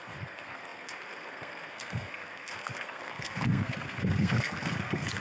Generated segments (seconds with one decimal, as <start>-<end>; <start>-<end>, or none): 0.0-5.2